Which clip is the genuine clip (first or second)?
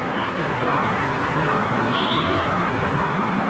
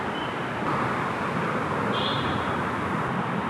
second